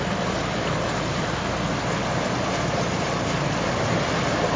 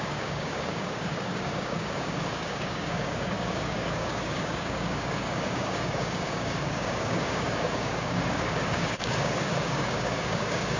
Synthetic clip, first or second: second